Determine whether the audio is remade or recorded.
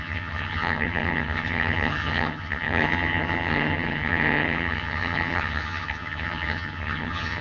remade